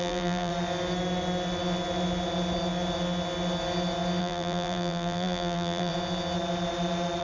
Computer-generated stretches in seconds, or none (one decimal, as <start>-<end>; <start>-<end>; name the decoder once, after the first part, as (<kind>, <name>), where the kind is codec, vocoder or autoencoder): 0.0-0.5 (vocoder, BigVGAN v2); 4.2-5.9